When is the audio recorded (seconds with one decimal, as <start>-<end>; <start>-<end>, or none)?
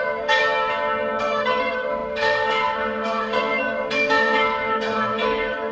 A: 0.4-1.2